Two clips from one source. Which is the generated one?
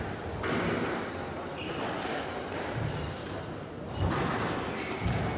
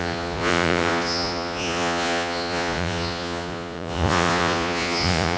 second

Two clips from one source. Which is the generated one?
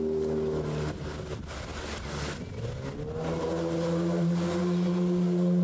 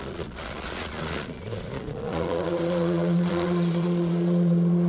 second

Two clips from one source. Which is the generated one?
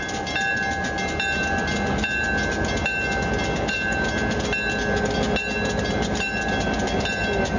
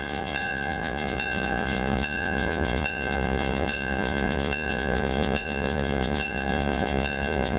second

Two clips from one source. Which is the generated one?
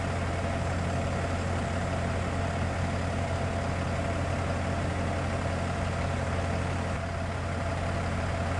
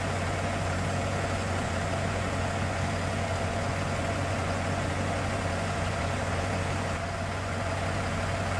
second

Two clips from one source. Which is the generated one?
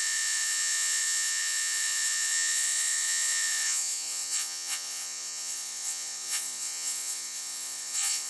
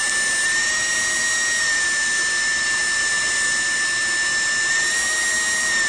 first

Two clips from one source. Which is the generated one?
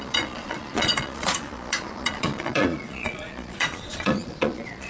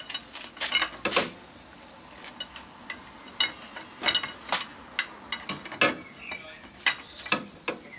first